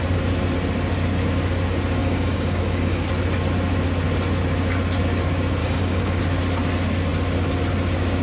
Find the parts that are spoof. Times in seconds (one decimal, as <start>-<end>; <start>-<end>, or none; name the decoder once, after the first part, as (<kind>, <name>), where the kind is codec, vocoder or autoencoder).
2.0-3.1 (codec, DAC); 5.6-6.2